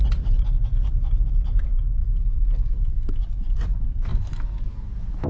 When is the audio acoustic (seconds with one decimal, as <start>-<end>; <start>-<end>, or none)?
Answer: 0.0-5.3